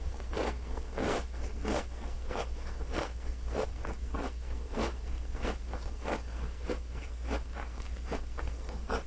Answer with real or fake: fake